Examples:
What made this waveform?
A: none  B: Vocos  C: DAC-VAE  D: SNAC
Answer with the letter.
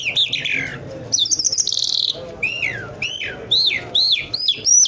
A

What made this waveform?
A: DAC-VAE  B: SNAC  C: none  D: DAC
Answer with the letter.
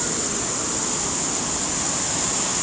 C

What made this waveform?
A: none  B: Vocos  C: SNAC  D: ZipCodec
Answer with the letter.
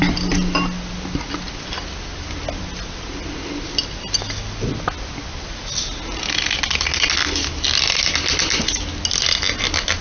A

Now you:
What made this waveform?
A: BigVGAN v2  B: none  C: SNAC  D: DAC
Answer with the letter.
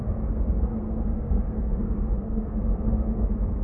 C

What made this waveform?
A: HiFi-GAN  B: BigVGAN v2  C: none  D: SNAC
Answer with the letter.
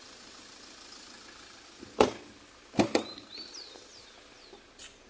C